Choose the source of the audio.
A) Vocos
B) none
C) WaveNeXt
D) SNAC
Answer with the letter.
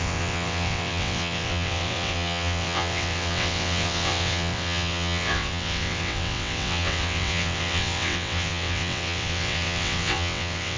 C